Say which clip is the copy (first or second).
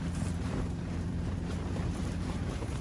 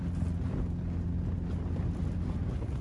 first